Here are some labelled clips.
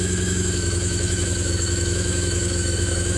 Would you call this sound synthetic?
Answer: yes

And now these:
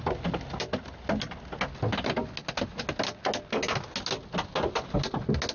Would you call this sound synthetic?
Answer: no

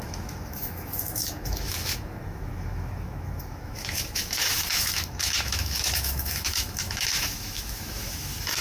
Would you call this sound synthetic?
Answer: yes